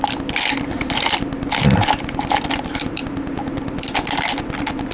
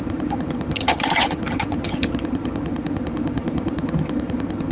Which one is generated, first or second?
second